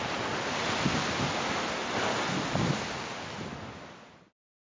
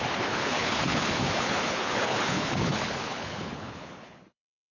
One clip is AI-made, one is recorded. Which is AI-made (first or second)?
second